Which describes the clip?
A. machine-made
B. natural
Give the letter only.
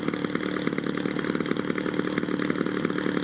B